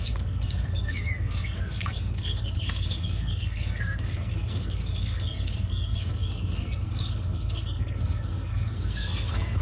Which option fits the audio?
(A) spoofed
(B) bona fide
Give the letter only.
A